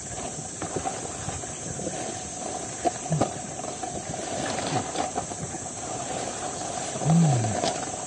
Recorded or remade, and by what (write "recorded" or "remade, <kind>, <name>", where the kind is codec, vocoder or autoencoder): recorded